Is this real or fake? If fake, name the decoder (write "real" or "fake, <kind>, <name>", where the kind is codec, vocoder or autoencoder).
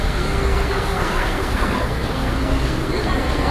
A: fake, codec, SNAC